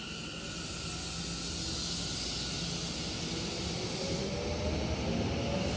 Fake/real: real